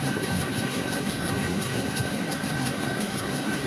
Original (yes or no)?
no